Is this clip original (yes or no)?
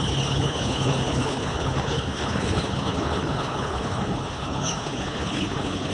no